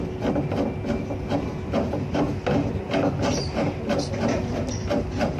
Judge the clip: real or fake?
real